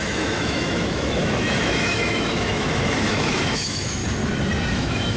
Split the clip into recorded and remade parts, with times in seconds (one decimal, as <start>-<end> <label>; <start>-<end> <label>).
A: 0.0-4.0 remade; 4.0-4.7 recorded; 4.7-5.2 remade